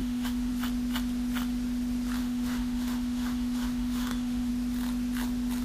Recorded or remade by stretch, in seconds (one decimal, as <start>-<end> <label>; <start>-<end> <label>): 0.0-0.5 remade; 0.5-2.2 recorded; 2.2-4.5 remade; 4.5-5.6 recorded